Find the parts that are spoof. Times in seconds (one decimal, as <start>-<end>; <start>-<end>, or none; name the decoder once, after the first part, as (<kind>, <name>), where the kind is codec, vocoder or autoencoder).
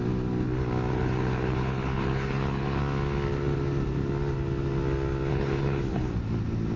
0.9-2.8 (codec, HILCodec); 5.3-6.1